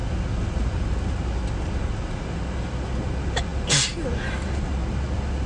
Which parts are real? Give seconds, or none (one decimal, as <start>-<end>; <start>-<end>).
0.0-5.5